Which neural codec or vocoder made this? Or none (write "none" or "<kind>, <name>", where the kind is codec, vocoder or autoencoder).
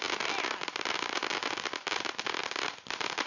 none